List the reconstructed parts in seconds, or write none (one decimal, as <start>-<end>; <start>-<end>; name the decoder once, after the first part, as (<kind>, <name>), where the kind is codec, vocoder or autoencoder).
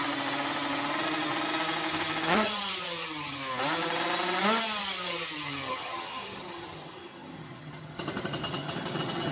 1.9-3.4 (vocoder, HiFi-GAN); 4.8-9.3